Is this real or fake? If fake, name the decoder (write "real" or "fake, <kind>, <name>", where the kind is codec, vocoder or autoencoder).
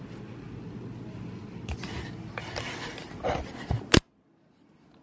real